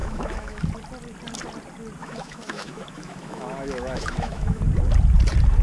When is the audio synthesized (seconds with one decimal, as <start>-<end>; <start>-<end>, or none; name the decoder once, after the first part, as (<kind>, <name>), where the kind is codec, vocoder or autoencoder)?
0.0-0.6 (autoencoder, DAC-VAE); 2.0-4.6